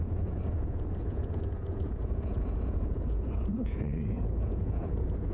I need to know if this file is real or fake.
fake